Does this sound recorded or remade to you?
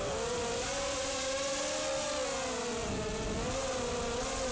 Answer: recorded